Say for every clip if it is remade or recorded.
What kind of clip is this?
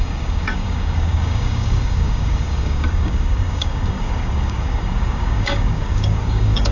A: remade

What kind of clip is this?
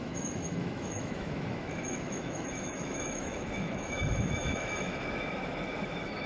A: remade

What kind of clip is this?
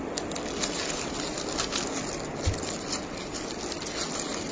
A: recorded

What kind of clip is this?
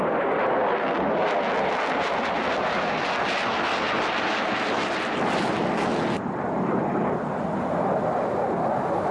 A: recorded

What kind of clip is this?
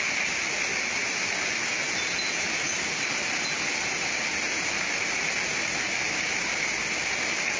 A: recorded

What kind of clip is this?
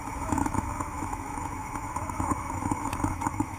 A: remade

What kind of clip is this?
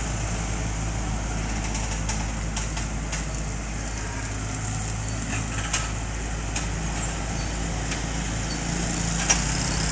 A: recorded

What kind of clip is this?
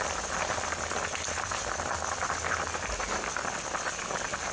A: recorded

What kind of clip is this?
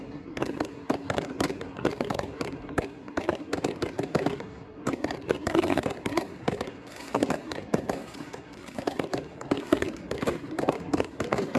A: remade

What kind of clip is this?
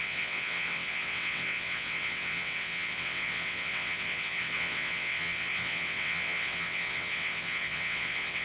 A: remade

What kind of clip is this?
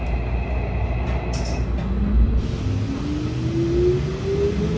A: recorded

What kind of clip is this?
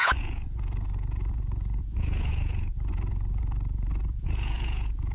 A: remade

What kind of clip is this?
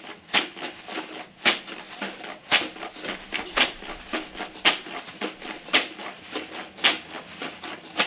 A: recorded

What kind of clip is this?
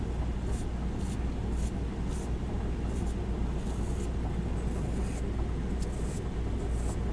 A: recorded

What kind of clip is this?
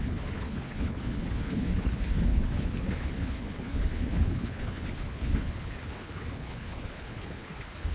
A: remade